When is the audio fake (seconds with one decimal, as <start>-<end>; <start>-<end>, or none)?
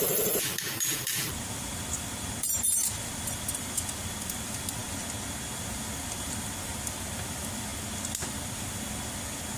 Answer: 0.0-4.8; 5.5-7.7; 8.3-9.6